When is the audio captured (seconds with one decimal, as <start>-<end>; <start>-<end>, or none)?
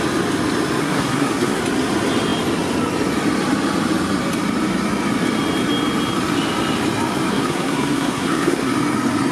0.0-0.8; 1.6-7.3; 8.7-9.3